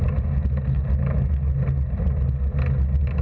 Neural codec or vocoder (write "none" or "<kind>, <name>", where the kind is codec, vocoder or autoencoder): none